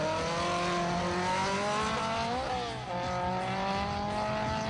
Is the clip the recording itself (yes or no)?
yes